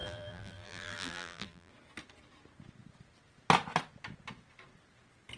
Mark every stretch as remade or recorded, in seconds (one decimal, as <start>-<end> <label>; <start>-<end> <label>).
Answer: 0.0-1.7 remade; 1.7-5.4 recorded